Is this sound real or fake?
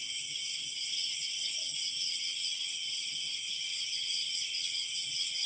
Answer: fake